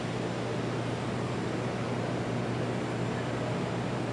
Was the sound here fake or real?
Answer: real